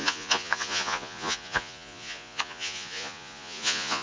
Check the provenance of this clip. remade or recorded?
remade